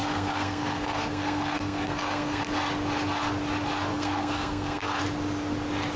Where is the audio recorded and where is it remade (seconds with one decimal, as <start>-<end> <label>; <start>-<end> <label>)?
0.0-2.4 remade; 2.4-3.9 recorded; 3.9-5.0 remade; 5.0-6.0 recorded